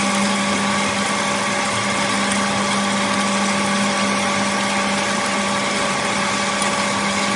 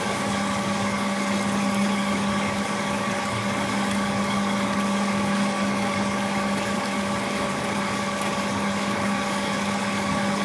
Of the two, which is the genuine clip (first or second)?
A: first